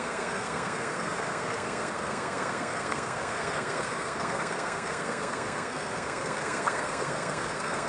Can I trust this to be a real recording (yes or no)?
no